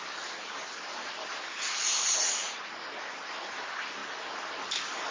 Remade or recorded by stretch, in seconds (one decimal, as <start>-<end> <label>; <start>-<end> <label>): 0.0-1.8 recorded; 1.8-2.6 remade; 2.6-5.1 recorded